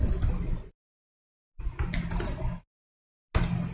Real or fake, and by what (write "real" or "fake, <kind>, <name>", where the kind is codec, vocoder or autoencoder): real